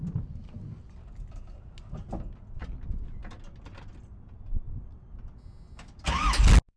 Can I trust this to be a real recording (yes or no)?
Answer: yes